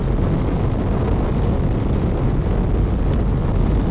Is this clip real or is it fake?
real